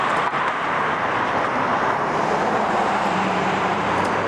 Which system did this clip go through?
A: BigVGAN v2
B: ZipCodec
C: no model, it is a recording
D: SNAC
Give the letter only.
A